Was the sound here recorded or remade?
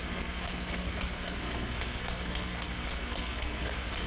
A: remade